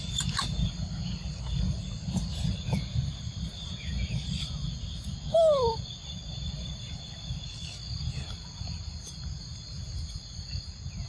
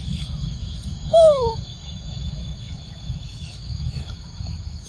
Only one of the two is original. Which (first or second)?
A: first